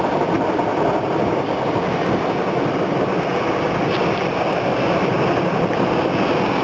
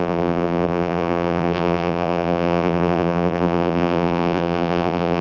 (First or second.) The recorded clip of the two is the first